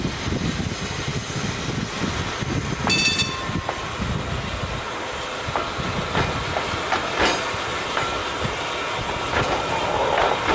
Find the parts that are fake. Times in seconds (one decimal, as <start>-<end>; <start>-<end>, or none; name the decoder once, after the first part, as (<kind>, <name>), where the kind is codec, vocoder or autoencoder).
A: none